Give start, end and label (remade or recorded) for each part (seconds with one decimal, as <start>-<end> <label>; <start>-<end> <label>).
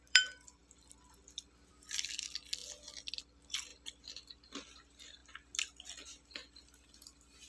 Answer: 0.0-0.6 remade; 0.6-1.7 recorded; 1.7-2.6 remade; 2.6-3.2 recorded; 3.2-5.2 remade; 5.2-7.0 recorded; 7.0-7.5 remade